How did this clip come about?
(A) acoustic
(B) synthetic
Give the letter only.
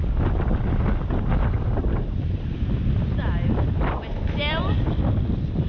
A